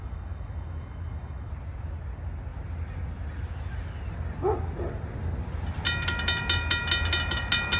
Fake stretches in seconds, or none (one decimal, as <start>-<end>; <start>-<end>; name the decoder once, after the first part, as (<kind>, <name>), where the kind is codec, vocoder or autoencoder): 0.0-1.5 (autoencoder, DAC-VAE)